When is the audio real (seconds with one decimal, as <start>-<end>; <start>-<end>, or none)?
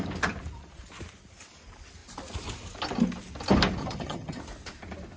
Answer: 0.0-3.8; 4.4-5.2